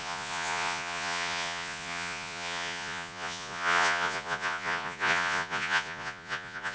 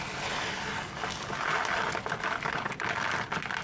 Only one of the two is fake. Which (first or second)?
first